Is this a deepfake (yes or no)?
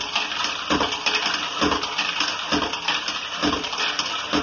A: no